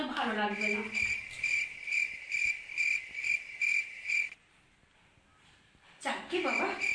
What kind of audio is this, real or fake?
real